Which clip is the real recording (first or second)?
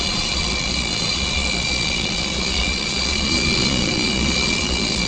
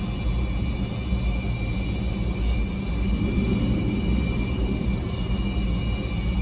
second